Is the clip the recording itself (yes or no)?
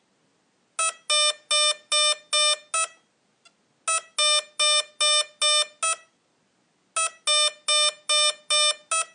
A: yes